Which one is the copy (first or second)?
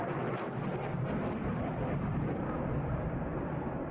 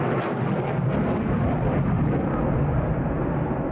first